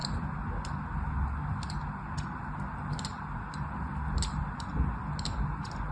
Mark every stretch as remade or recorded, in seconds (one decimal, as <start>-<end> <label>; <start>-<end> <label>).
0.0-5.9 recorded